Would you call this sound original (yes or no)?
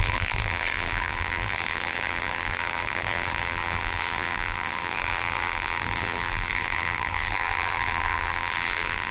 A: no